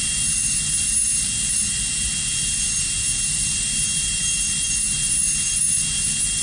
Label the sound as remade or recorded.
remade